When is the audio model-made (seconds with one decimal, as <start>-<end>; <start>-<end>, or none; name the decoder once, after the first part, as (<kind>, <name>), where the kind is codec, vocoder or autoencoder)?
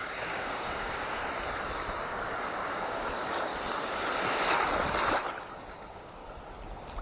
0.0-1.2 (codec, DAC); 2.0-3.5; 5.7-6.2